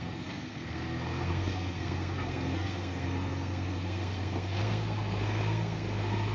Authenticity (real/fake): fake